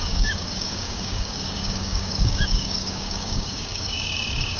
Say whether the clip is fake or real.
fake